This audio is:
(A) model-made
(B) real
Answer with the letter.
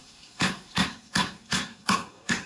A